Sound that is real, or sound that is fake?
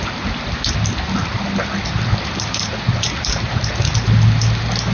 real